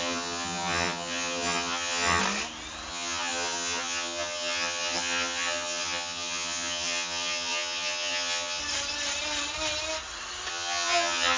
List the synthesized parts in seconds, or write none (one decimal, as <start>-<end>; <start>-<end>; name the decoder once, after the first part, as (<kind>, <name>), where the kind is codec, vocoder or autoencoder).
0.0-2.2 (vocoder, HiFi-GAN); 2.9-8.6; 10.5-11.4